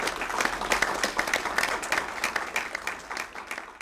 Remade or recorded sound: recorded